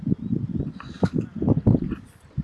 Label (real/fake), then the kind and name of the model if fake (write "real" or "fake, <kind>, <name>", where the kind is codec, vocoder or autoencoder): real